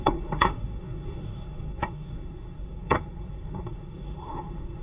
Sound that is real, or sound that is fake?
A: fake